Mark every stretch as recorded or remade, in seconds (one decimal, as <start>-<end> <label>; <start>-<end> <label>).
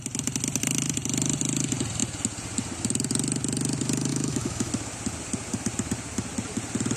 0.0-4.1 recorded; 4.1-4.7 remade; 4.7-7.0 recorded